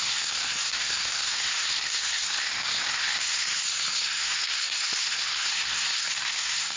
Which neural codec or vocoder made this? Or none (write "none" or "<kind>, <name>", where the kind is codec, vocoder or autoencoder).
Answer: codec, SNAC